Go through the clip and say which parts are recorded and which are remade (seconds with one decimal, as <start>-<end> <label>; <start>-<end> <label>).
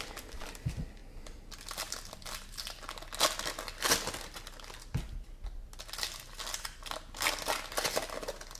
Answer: 0.0-8.6 recorded